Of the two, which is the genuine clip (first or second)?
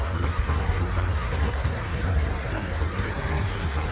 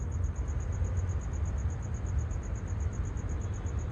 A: second